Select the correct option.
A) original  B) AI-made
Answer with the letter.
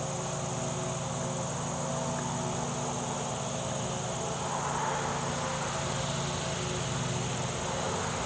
A